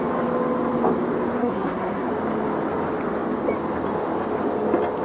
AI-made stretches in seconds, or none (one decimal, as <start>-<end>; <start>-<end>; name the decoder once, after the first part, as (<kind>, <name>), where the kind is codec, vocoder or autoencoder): 1.4-2.1 (codec, SNAC)